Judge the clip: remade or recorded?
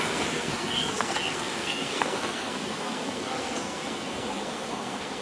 remade